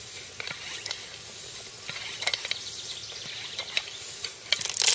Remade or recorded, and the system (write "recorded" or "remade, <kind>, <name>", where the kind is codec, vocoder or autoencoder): recorded